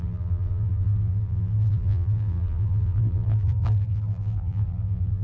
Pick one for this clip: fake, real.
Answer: fake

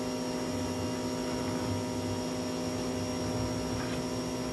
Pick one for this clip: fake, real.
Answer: real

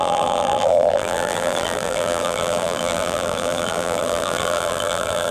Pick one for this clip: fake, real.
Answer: fake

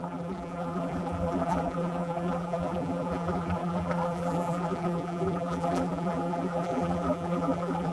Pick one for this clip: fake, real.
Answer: fake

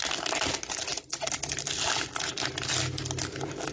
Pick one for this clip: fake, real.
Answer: real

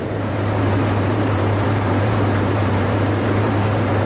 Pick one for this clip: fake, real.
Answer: fake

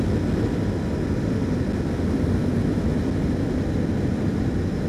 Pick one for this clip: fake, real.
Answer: real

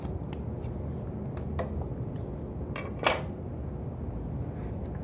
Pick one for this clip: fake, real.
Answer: real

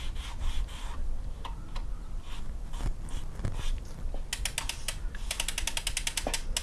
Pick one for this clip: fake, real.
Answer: real